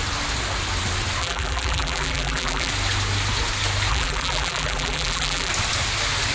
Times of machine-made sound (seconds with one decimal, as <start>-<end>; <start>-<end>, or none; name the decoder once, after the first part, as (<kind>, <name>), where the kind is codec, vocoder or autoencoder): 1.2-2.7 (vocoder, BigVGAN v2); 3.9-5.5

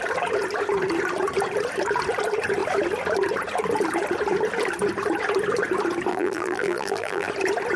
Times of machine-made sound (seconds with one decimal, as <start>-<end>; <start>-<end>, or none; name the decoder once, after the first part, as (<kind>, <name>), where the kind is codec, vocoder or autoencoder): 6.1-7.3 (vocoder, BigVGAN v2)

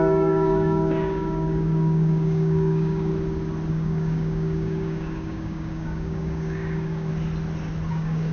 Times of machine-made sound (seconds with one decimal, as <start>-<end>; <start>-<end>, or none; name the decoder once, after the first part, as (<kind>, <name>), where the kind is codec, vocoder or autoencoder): 0.0-3.1 (codec, DAC); 3.7-7.1; 7.9-8.3

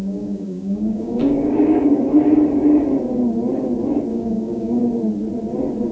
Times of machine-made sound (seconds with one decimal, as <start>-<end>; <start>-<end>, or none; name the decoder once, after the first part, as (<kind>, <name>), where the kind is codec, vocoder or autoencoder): 0.0-2.0 (codec, DAC); 4.1-4.8

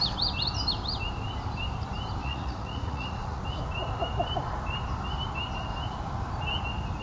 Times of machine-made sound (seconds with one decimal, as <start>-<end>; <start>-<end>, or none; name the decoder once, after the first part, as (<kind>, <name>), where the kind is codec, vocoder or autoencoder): 2.2-3.4 (vocoder, Vocos)

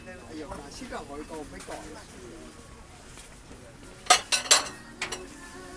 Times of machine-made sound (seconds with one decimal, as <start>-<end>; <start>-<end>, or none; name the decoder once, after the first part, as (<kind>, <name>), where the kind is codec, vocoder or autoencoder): none

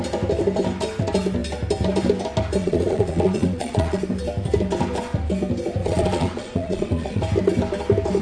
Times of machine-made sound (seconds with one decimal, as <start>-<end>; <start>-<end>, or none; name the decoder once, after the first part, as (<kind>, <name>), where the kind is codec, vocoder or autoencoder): 2.6-4.0 (vocoder, Vocos); 5.8-7.2

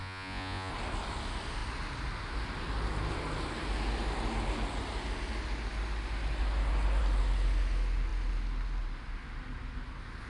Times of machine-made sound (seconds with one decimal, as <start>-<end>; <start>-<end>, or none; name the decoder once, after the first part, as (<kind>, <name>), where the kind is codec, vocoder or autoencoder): 0.0-0.7 (vocoder, Vocos)